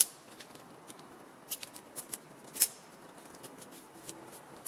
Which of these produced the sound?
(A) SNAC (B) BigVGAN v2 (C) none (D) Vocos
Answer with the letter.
C